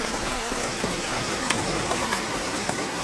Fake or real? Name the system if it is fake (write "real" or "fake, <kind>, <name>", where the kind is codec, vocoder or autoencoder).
fake, codec, SNAC